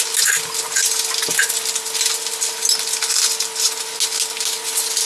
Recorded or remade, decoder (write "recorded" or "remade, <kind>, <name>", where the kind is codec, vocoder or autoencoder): recorded